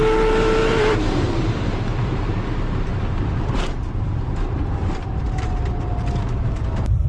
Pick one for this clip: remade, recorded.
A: remade